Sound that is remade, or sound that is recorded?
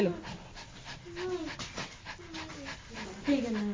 recorded